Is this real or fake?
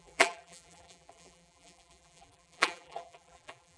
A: fake